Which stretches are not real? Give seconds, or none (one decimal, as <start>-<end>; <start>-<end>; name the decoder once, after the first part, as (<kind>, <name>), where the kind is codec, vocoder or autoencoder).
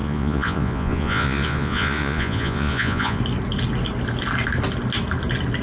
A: 0.0-3.2 (vocoder, Vocos)